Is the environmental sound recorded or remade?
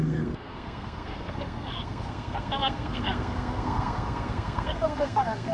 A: remade